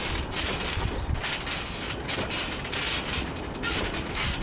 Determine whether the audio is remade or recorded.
recorded